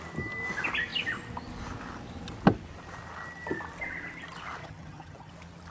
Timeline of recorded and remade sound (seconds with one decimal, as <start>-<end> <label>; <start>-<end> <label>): 0.0-4.6 recorded; 4.6-5.3 remade; 5.3-5.7 recorded